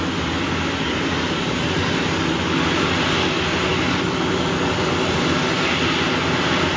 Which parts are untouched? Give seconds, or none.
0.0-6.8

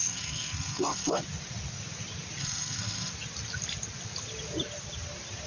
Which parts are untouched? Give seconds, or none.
1.2-2.4; 3.1-5.5